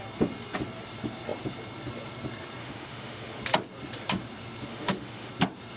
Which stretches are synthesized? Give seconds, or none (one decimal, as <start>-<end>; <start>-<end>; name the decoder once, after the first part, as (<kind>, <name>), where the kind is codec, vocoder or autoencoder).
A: 2.6-3.4 (autoencoder, DAC-VAE); 4.7-5.3